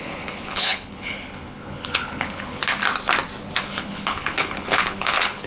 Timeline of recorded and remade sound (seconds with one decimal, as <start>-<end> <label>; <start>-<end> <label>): 0.0-2.6 remade; 2.6-3.6 recorded; 3.6-5.5 remade